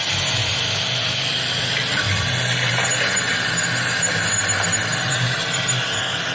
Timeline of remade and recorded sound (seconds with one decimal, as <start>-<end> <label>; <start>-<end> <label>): 0.0-0.4 recorded; 0.4-2.7 remade; 2.7-6.3 recorded